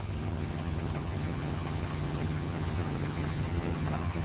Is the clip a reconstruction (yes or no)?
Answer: yes